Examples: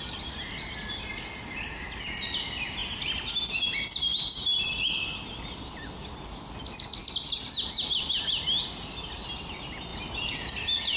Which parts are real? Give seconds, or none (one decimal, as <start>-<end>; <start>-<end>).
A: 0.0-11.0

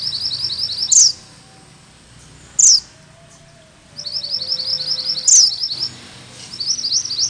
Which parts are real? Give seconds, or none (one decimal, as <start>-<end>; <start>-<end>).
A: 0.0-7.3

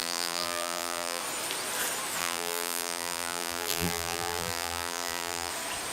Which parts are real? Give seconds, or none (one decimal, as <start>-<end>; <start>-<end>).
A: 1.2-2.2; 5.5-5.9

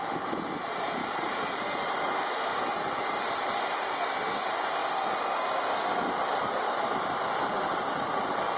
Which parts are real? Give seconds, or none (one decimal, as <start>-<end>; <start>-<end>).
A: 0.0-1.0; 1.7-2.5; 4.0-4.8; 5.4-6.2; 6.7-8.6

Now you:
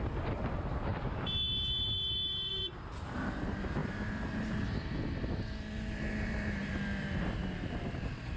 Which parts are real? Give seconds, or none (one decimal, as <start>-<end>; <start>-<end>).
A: none

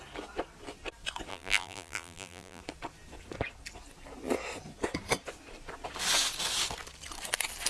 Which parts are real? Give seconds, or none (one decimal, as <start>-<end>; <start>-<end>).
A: 0.0-1.3; 2.6-7.7

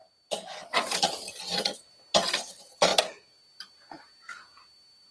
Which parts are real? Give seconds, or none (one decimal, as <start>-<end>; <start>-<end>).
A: 1.4-2.9

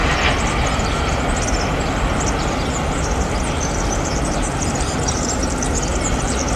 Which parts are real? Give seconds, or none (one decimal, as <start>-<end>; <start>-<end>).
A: 0.0-4.0; 5.4-5.9